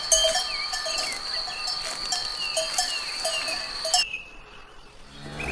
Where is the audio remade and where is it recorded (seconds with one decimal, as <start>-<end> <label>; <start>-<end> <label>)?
0.0-5.5 recorded